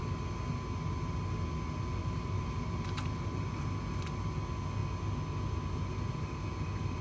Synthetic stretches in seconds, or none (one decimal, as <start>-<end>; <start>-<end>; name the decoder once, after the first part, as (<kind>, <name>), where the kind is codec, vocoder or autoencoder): 2.0-3.4 (vocoder, BigVGAN v2)